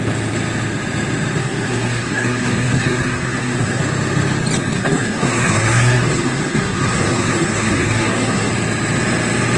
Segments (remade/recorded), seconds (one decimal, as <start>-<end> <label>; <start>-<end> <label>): 0.0-1.4 recorded; 1.4-3.8 remade; 3.8-4.6 recorded; 4.6-8.5 remade; 8.5-9.6 recorded